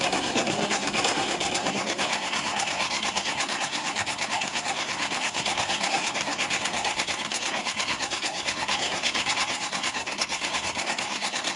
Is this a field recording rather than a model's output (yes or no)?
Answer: no